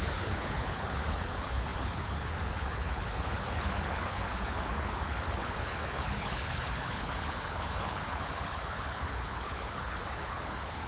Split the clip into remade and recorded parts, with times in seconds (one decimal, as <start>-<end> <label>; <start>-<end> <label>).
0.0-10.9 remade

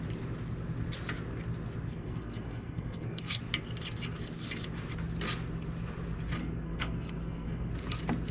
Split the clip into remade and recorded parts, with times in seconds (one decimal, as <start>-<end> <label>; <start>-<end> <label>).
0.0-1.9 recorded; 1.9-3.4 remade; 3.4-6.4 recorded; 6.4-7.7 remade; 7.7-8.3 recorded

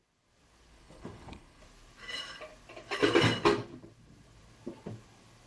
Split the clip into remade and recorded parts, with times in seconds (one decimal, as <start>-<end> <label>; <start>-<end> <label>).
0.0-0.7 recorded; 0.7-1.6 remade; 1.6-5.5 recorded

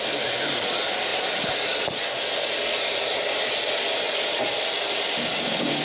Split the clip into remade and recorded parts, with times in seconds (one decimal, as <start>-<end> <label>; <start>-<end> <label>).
0.0-5.8 recorded

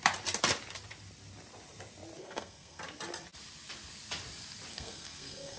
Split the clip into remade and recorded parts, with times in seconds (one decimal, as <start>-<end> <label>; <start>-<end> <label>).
0.0-2.2 recorded; 2.2-2.8 remade; 2.8-4.7 recorded; 4.7-5.6 remade

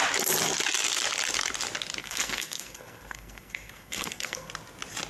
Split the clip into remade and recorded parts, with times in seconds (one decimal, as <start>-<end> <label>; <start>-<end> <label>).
0.0-2.0 recorded; 2.0-4.5 remade; 4.5-5.1 recorded

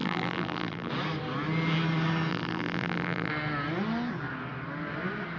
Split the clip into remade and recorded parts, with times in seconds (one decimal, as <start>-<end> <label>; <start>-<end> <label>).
0.0-0.9 remade; 0.9-2.3 recorded; 2.3-3.3 remade; 3.3-5.4 recorded

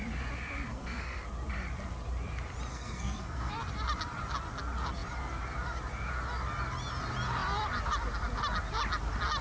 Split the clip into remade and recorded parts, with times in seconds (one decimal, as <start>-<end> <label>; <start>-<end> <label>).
0.0-0.7 recorded; 0.7-1.2 remade; 1.2-2.7 recorded; 2.7-3.5 remade; 3.5-9.4 recorded